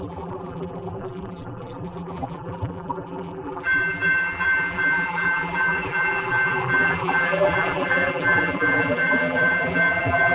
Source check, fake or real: fake